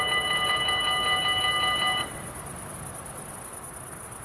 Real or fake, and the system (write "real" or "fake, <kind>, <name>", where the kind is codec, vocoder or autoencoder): real